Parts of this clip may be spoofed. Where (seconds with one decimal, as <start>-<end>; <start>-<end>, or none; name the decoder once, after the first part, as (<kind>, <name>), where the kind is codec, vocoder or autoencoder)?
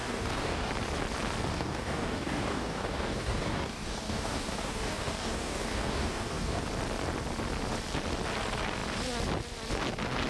0.0-0.7 (codec, DAC); 1.5-6.6